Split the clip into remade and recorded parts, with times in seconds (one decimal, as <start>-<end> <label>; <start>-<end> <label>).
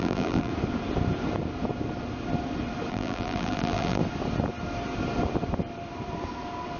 0.0-0.5 remade; 0.5-2.9 recorded; 2.9-4.0 remade; 4.0-6.8 recorded